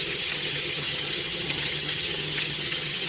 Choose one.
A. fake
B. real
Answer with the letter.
A